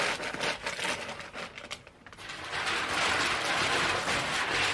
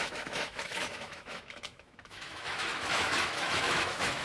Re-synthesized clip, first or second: second